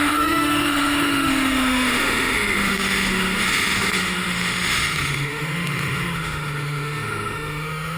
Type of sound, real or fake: fake